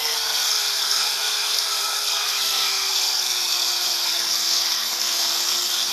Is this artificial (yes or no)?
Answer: yes